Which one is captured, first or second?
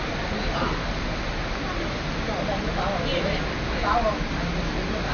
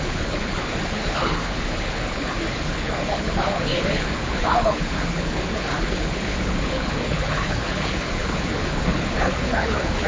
first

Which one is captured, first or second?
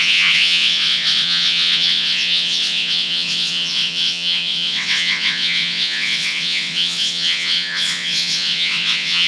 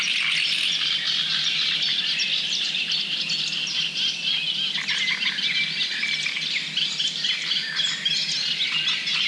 second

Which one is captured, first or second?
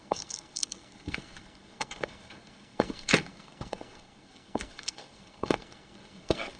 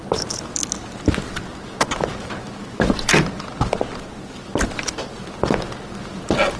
second